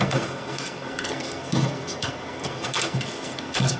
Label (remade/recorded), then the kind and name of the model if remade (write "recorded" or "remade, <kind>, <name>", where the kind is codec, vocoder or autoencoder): remade, codec, SNAC